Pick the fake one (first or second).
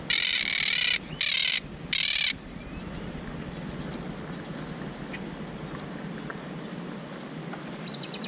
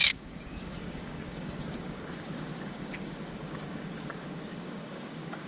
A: second